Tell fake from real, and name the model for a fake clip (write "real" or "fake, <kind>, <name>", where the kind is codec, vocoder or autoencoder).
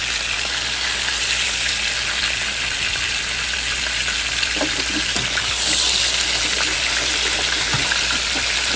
real